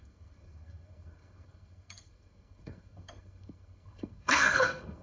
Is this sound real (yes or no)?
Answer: no